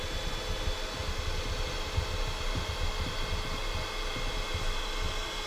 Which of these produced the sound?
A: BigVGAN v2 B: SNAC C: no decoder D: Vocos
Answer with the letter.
C